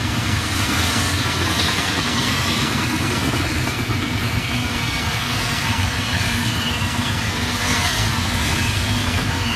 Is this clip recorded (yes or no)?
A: no